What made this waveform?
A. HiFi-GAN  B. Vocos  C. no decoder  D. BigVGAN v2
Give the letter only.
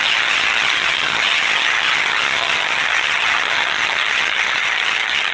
A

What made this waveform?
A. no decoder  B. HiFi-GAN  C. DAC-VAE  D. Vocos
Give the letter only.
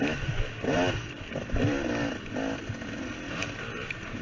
A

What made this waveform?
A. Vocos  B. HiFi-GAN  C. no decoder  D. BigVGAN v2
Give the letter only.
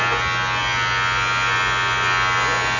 C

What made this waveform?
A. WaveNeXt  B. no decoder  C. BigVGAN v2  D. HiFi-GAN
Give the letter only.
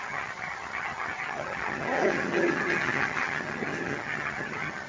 D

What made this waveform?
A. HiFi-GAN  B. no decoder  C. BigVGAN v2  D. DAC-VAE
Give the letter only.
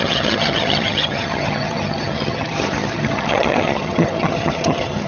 A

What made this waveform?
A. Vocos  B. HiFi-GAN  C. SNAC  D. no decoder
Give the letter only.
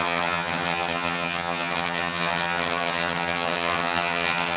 B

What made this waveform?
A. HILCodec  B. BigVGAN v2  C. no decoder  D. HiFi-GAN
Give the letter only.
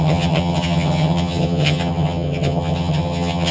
D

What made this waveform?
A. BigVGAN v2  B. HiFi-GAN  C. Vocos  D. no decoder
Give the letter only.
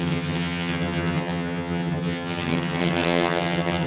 B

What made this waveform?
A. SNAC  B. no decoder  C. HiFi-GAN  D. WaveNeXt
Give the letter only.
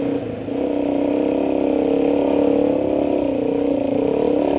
B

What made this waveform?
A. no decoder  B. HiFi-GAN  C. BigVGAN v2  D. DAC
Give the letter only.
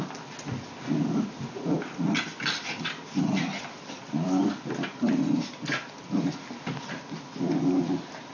A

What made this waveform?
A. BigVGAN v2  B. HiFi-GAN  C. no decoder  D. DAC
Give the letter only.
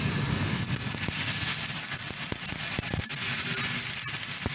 C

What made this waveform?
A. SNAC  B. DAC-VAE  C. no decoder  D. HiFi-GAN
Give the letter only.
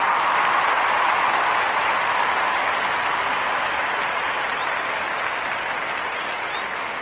C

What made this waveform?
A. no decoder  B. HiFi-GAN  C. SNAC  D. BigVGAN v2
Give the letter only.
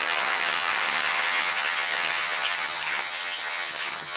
B